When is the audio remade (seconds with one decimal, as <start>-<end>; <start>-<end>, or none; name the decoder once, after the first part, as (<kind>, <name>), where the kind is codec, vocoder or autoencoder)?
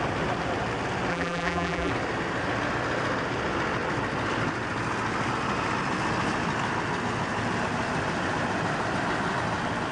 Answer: 1.1-1.9 (vocoder, BigVGAN v2)